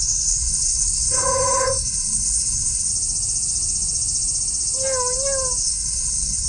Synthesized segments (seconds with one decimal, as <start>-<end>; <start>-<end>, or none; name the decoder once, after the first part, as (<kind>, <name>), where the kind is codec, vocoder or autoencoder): 0.0-2.9 (codec, SNAC); 5.6-6.5